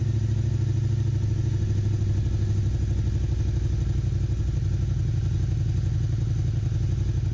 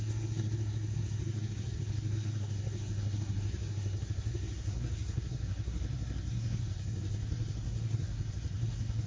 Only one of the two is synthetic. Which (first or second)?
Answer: second